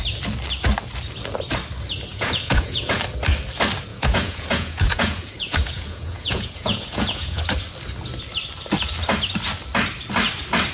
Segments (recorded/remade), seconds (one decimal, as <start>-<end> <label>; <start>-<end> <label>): 0.0-2.1 recorded; 2.1-3.0 remade; 3.0-3.9 recorded; 3.9-7.4 remade; 7.4-10.7 recorded